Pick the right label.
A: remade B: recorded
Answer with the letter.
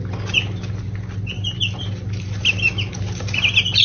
B